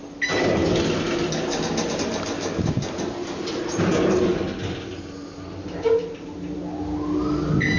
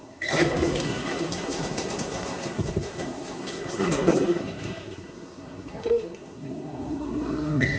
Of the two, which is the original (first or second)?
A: first